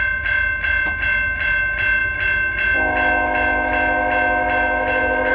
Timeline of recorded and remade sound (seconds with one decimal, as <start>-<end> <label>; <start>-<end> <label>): 0.0-5.3 recorded